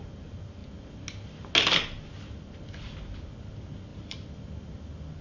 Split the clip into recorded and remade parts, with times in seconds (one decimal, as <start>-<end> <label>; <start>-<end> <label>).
0.0-5.2 recorded